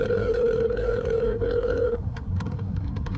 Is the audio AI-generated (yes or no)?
yes